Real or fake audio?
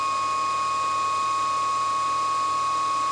real